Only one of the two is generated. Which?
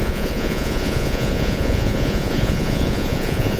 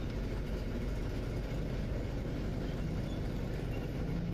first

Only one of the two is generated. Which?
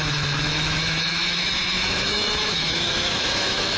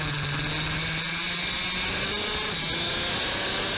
first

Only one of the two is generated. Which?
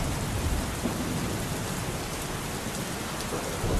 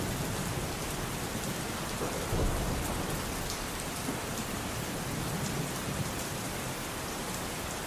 second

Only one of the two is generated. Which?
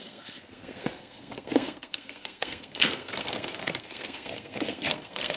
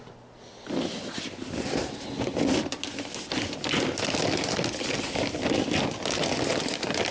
first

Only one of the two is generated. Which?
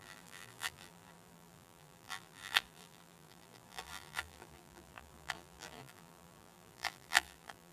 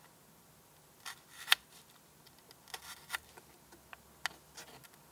first